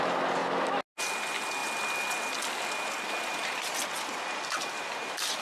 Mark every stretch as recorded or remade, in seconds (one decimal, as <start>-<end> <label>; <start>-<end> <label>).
0.0-5.4 recorded